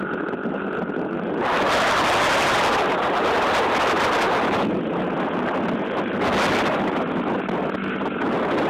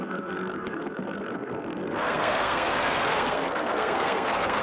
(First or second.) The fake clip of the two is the second